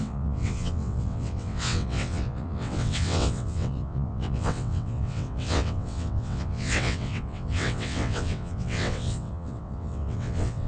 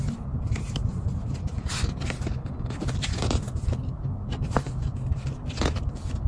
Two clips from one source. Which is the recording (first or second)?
second